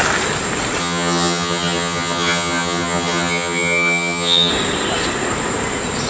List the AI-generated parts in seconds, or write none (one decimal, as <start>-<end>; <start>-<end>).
0.8-4.5